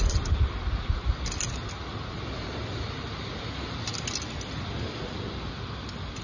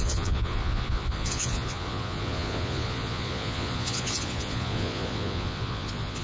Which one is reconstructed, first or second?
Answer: second